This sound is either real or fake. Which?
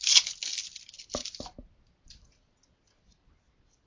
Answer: real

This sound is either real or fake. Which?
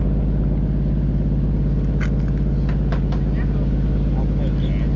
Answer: real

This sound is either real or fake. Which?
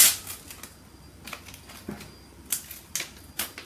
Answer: real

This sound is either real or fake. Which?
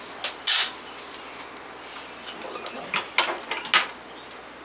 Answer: real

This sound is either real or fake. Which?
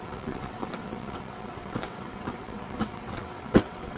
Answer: fake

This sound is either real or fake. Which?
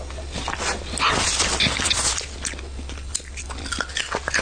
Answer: real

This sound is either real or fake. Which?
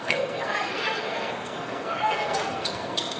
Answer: fake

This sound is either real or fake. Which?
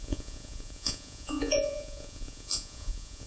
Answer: fake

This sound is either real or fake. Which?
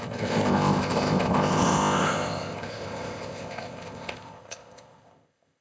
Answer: fake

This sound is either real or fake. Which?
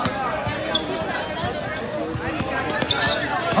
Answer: real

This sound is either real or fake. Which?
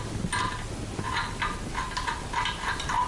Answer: real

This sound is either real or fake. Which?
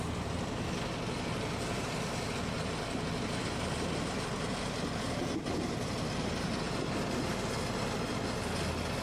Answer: real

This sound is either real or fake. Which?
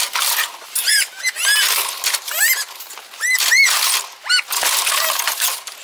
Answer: real